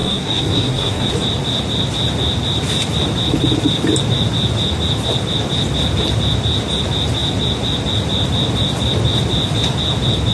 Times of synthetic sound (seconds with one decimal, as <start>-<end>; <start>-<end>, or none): 0.0-1.1